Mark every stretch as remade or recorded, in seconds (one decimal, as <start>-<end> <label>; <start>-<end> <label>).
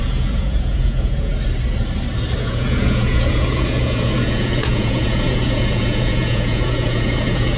0.0-1.3 remade; 1.3-2.4 recorded; 2.4-7.6 remade